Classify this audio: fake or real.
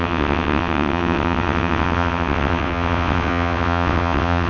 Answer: fake